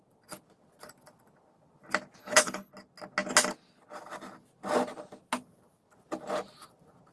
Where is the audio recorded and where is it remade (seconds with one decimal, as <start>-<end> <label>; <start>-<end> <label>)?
0.0-2.2 recorded; 2.2-2.7 remade; 2.7-7.1 recorded